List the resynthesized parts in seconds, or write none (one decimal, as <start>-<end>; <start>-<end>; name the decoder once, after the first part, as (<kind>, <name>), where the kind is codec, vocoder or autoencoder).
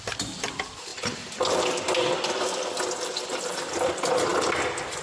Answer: 0.9-3.9 (vocoder, BigVGAN v2); 4.3-5.0